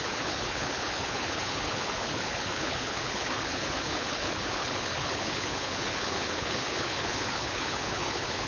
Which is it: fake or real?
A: fake